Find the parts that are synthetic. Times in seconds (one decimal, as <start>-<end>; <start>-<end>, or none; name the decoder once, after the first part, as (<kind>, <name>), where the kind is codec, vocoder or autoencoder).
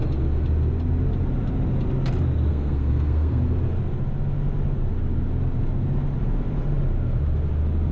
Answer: 2.5-3.4 (codec, SNAC)